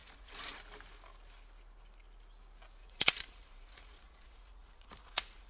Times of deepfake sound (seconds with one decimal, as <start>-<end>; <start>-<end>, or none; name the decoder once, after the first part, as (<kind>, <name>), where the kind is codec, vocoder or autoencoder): 0.0-0.6 (vocoder, Vocos); 2.8-5.5